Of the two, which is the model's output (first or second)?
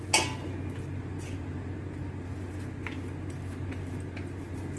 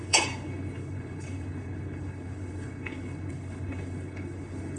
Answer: second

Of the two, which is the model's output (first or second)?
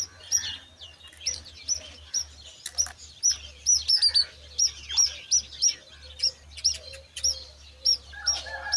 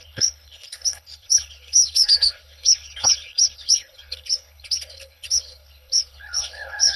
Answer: second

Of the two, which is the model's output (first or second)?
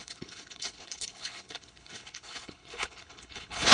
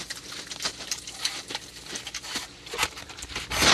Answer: first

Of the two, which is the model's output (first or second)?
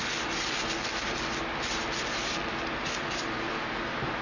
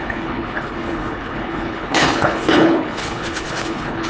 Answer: second